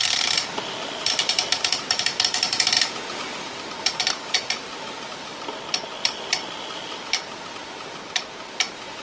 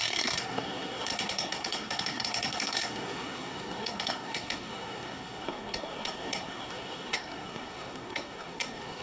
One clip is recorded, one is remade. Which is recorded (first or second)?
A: first